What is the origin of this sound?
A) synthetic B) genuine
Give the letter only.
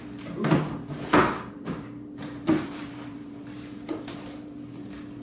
A